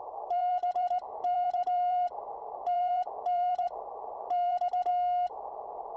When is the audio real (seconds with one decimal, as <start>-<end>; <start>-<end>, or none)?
4.9-6.0